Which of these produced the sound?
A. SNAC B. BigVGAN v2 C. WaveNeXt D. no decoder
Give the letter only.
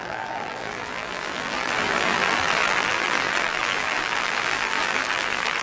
B